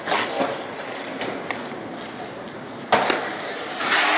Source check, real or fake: real